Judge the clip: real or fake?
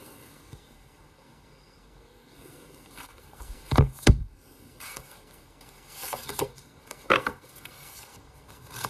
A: fake